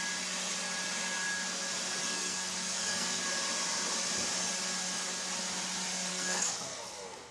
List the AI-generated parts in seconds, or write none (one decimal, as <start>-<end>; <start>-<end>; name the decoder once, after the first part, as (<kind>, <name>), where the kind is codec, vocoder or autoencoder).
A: 2.0-3.2 (codec, SNAC); 6.1-7.3